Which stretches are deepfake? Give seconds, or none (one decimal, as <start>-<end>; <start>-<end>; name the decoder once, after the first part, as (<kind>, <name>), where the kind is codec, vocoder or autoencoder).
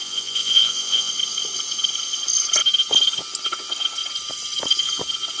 0.0-1.1 (vocoder, Vocos)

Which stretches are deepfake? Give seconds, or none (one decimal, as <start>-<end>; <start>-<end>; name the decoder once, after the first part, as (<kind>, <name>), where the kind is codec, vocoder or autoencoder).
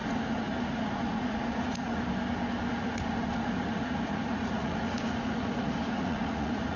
0.0-2.0 (vocoder, Vocos); 2.7-6.8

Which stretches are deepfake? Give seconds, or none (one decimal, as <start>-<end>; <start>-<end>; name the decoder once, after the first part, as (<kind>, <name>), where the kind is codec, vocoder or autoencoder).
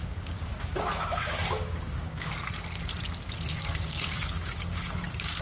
0.0-2.3 (codec, DAC); 3.5-5.4